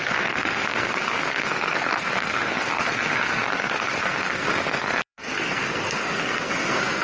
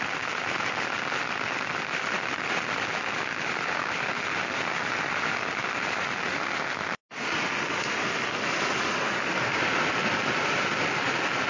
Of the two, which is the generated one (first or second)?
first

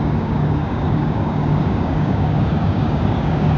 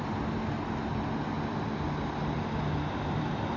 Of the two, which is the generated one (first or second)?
first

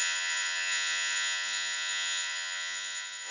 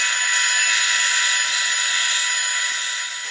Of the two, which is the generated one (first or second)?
first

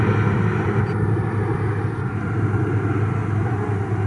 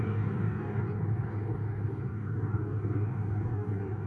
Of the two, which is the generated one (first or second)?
second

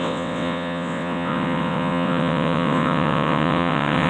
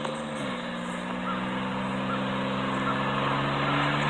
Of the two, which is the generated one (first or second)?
first